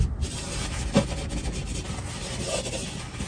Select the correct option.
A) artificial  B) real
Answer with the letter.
B